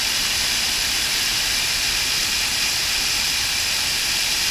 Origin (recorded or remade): recorded